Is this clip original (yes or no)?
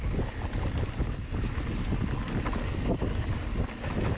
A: yes